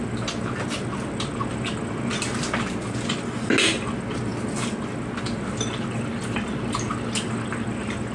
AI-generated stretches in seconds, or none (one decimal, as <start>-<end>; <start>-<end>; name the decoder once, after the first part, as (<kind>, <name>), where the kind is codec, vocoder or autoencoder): none